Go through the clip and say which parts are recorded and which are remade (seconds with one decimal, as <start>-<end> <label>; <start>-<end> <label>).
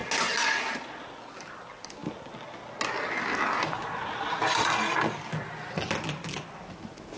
0.0-7.2 recorded